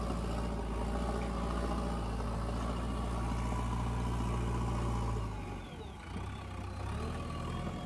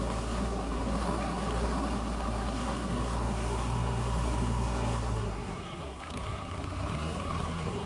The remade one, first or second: second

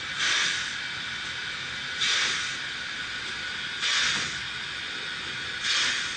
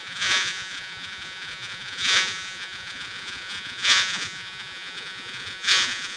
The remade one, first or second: second